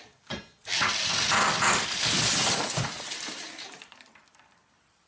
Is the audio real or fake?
real